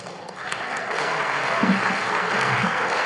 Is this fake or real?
fake